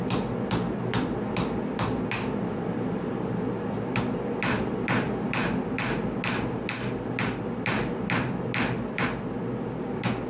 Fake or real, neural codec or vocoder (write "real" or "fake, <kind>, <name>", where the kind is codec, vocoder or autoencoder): real